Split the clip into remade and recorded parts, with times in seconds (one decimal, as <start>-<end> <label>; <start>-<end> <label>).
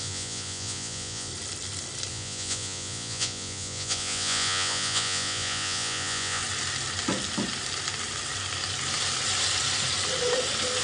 0.0-1.3 remade; 1.3-2.1 recorded; 2.1-6.4 remade; 6.4-10.8 recorded